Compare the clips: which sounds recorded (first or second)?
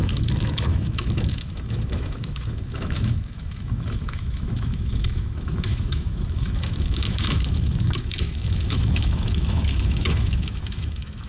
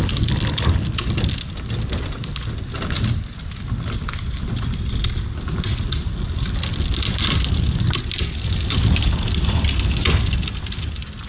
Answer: second